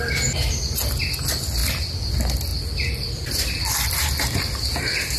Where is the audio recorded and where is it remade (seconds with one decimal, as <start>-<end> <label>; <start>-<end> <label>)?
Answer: 0.0-5.2 recorded